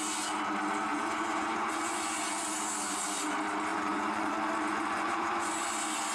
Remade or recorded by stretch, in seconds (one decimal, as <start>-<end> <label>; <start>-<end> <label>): 0.0-0.9 recorded; 0.9-2.2 remade; 2.2-3.7 recorded; 3.7-4.3 remade; 4.3-4.7 recorded; 4.7-6.1 remade

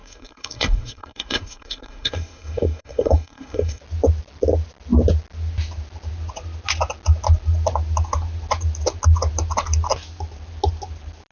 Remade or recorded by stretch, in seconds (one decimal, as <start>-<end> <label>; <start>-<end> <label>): 0.0-3.8 remade; 3.8-11.3 recorded

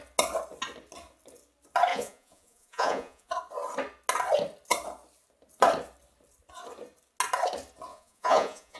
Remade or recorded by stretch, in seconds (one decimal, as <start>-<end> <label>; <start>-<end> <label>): 0.0-1.9 recorded; 1.9-3.3 remade; 3.3-7.9 recorded; 7.9-8.8 remade